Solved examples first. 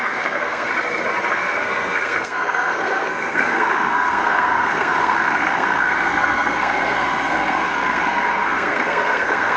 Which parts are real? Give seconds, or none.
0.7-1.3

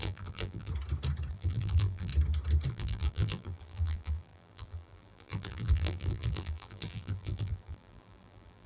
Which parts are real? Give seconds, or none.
0.7-1.3; 2.1-2.7

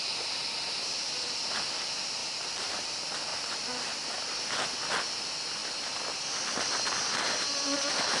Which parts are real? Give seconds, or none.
0.0-2.2; 2.9-3.3; 4.5-8.2

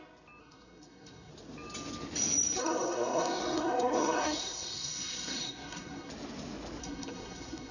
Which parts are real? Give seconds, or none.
0.0-0.4; 1.3-2.6; 6.1-6.8

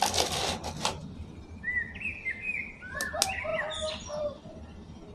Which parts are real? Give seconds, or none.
0.0-5.1

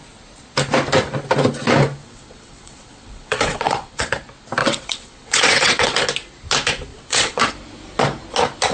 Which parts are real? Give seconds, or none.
0.0-2.0; 4.1-4.6; 6.0-6.9; 7.5-8.7

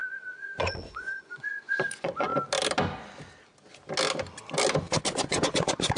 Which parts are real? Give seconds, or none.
2.3-5.1